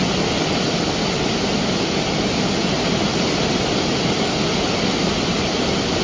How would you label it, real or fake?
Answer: real